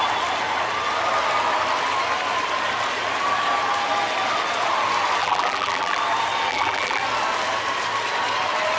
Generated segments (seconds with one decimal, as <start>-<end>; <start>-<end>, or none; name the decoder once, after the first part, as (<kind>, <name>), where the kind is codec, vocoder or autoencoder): 5.2-6.0 (vocoder, BigVGAN v2); 6.5-7.0